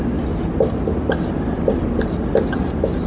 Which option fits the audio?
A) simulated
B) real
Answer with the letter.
B